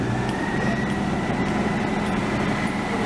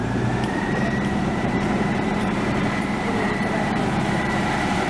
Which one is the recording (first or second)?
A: first